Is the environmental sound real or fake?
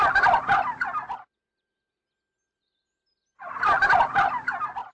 real